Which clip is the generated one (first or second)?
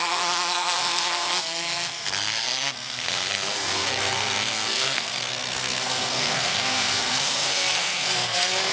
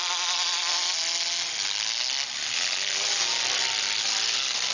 first